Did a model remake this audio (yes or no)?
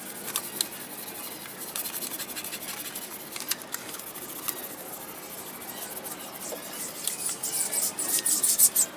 no